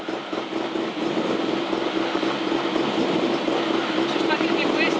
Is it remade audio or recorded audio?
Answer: recorded